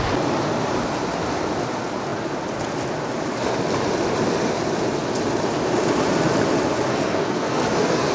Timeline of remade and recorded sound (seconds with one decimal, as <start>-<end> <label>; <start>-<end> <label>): 0.0-6.9 recorded; 6.9-8.1 remade